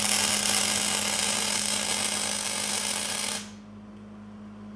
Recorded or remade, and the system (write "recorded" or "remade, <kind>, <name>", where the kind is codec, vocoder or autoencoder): recorded